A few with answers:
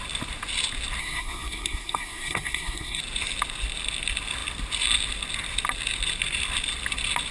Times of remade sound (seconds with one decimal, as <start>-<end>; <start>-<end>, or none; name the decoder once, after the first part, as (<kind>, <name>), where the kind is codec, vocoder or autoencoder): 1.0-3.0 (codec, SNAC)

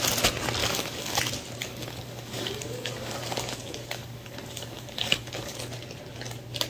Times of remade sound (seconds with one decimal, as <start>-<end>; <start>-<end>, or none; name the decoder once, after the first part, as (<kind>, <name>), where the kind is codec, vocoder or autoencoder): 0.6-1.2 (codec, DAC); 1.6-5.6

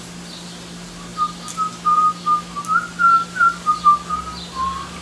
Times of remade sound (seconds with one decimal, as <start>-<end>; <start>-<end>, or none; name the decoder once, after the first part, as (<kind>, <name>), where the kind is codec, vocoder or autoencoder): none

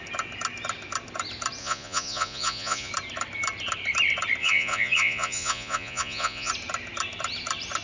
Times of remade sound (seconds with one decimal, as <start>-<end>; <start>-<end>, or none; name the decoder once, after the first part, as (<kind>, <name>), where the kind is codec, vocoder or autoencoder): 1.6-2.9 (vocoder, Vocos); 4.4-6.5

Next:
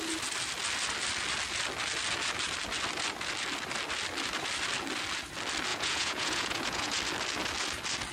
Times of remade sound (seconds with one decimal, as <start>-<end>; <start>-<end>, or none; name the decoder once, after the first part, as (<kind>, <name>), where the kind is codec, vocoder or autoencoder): 5.7-7.0 (vocoder, Vocos)

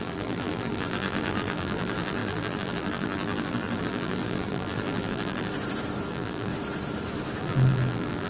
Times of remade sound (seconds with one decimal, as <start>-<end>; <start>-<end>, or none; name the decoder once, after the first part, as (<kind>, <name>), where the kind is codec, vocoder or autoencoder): 0.0-5.5 (vocoder, BigVGAN v2); 6.1-6.5; 7.4-8.3

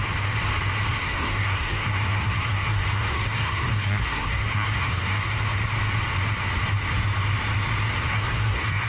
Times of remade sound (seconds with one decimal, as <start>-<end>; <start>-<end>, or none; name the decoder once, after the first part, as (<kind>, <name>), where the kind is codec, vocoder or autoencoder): 1.0-5.4 (codec, SNAC); 8.1-8.9